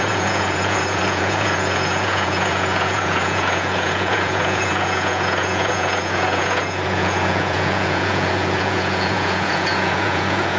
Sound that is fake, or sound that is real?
fake